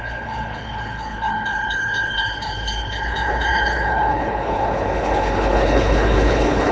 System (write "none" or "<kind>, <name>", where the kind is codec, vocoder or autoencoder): codec, HILCodec